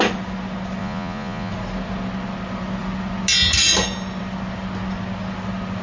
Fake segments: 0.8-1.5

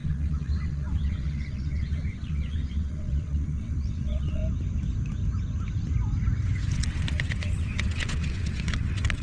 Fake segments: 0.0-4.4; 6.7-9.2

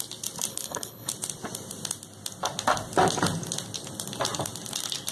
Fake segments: 0.5-1.1

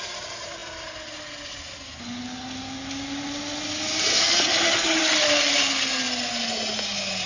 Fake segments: none

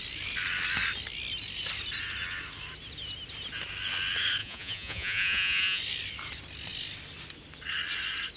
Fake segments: 4.4-5.8